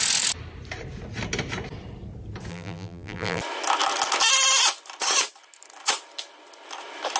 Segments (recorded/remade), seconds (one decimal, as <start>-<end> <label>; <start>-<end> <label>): 0.0-2.5 recorded; 2.5-3.4 remade; 3.4-7.2 recorded